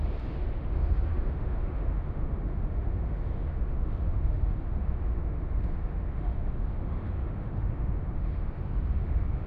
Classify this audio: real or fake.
fake